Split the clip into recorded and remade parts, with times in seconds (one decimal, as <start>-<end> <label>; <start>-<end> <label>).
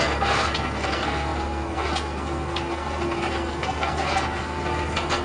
0.0-5.2 remade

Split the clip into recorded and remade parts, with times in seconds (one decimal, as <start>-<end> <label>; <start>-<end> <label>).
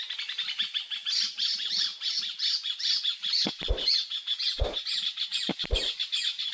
0.0-6.5 recorded